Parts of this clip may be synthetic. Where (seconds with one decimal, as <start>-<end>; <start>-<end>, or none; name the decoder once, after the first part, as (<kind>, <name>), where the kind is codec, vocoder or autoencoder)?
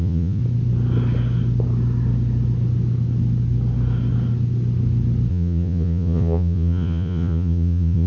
0.0-0.4 (vocoder, Vocos); 5.3-8.1